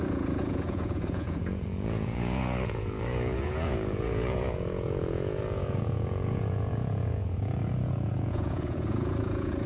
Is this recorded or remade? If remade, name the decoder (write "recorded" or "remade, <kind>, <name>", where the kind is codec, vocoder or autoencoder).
remade, vocoder, Vocos